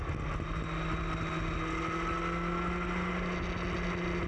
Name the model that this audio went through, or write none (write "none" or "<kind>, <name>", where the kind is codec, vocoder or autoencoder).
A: none